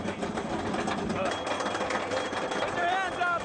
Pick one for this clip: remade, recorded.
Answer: recorded